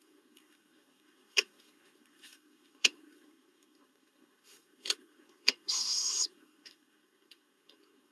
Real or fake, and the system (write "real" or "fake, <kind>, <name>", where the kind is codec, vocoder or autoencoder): fake, codec, SNAC